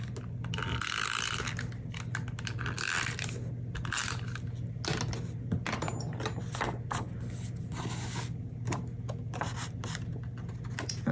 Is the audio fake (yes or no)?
no